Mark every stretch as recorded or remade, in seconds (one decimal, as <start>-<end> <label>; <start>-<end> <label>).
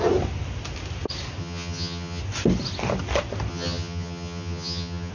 0.0-1.4 recorded; 1.4-2.2 remade; 2.2-3.5 recorded; 3.5-5.1 remade